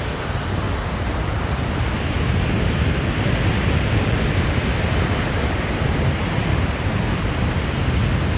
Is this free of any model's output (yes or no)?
yes